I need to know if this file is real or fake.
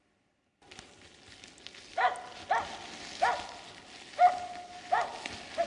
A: real